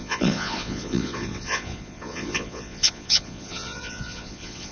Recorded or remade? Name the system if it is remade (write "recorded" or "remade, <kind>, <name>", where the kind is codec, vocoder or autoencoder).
remade, vocoder, Vocos